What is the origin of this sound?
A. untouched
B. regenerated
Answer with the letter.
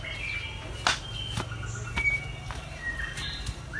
A